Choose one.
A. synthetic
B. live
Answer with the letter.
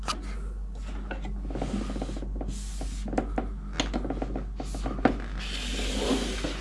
B